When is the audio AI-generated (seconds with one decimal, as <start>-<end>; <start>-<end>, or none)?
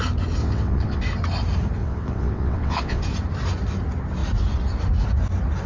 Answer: 0.4-1.0; 1.8-3.0